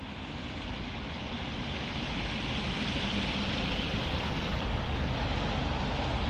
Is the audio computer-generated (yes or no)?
no